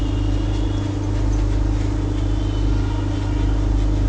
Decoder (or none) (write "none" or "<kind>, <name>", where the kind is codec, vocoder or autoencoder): none